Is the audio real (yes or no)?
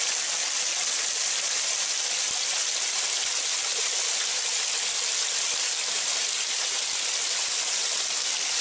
yes